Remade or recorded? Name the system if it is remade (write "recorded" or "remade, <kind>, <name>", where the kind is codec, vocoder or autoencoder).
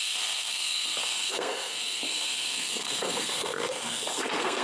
remade, codec, SNAC